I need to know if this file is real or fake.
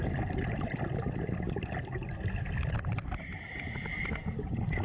real